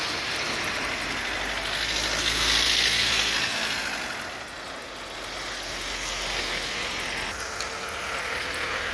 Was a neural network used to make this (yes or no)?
no